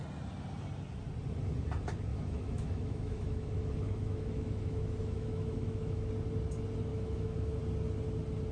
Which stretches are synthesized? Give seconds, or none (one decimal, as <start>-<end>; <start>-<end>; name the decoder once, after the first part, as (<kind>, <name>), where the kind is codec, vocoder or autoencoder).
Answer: 2.1-6.1 (autoencoder, DAC-VAE); 6.9-7.6